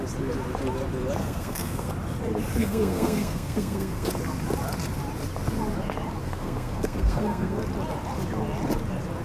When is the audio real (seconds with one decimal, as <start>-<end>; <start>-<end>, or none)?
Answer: 0.0-1.2; 1.9-2.6; 4.1-6.2; 7.6-9.2